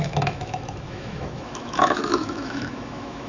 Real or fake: fake